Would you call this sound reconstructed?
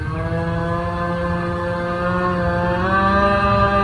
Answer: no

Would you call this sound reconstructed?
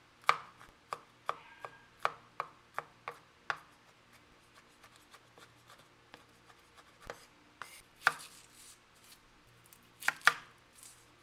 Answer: no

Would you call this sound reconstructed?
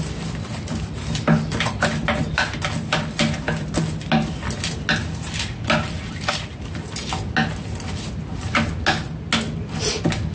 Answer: no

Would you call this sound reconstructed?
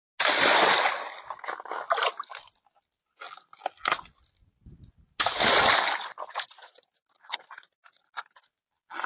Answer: no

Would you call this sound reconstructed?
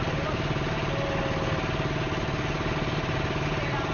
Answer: no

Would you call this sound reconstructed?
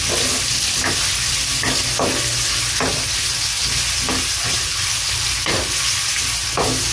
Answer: no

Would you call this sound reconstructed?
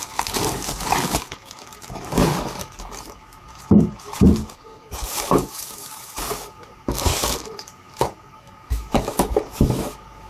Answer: yes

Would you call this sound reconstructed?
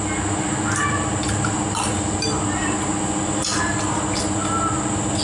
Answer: no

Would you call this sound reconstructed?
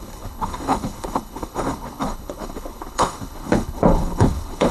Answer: yes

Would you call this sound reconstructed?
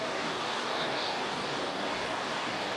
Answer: yes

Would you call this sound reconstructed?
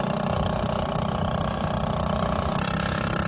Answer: no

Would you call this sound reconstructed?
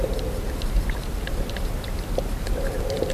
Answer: no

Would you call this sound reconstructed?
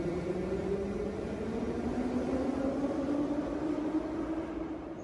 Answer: no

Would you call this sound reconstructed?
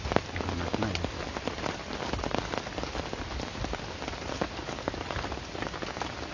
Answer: no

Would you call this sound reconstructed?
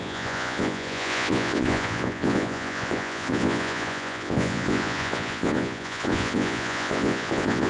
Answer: yes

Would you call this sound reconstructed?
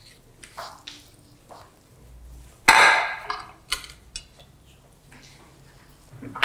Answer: no